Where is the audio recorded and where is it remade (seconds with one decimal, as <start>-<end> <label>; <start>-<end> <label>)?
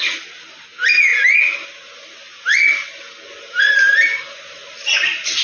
0.0-5.4 recorded